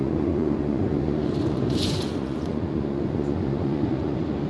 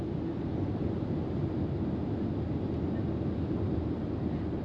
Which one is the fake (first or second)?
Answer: first